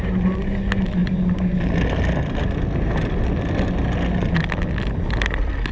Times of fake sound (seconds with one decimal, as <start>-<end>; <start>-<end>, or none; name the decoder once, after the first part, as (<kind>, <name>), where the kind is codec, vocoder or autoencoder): none